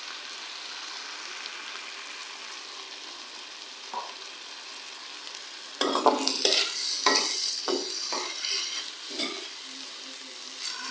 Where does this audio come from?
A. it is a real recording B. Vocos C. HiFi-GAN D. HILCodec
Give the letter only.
A